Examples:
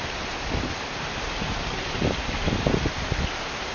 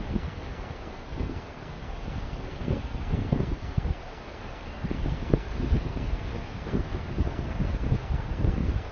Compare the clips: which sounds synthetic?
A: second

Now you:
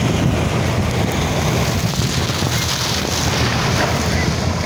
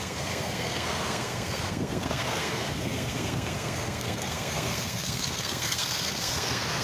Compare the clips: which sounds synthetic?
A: second